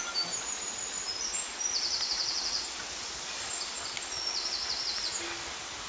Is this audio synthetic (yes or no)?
no